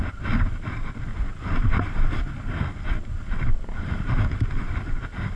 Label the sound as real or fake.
real